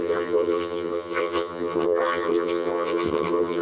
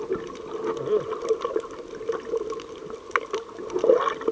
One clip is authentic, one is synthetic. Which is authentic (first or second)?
second